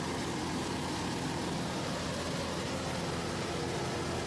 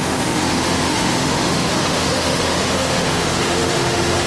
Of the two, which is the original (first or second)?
first